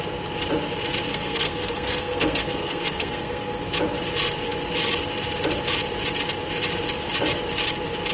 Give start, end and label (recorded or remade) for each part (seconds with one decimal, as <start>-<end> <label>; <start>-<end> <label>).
0.0-1.1 recorded; 1.1-3.6 remade; 3.6-8.1 recorded